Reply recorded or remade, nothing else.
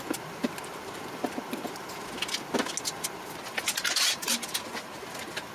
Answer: recorded